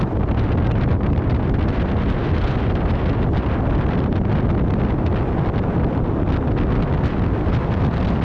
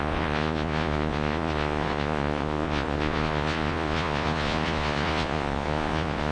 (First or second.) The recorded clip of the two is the first